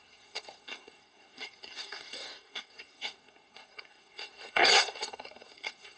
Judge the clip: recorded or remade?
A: remade